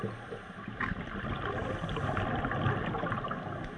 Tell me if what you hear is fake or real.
real